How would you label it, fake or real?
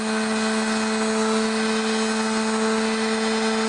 real